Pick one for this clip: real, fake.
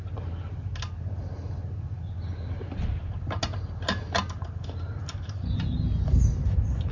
real